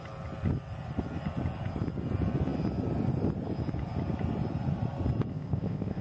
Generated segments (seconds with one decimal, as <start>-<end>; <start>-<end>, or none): 5.3-6.0